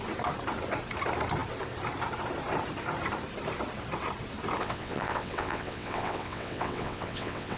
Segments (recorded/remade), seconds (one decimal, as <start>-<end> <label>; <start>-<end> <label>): 0.0-4.6 recorded; 4.6-7.6 remade